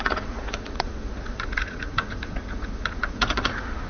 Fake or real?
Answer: fake